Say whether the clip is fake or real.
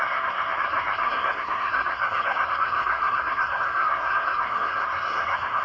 fake